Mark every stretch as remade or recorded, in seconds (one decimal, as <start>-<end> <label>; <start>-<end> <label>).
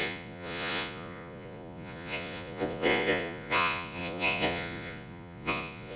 0.0-6.0 remade